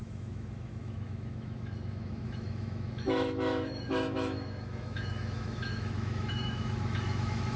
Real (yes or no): no